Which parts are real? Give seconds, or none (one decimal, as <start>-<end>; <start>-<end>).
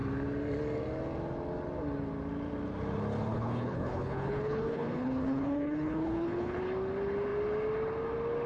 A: 0.0-3.3; 6.6-8.5